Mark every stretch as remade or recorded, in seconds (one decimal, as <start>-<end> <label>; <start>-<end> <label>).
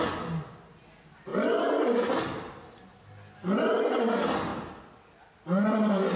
0.0-6.2 recorded